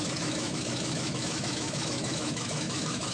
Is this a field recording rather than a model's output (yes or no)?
no